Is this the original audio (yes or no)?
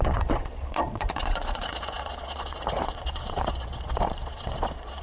no